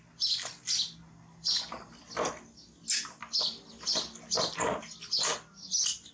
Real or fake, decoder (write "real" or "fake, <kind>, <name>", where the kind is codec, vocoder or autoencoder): real